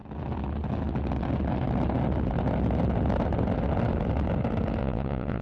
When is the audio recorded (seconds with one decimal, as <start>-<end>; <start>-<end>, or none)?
0.0-4.8